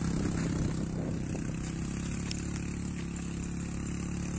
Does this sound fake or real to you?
real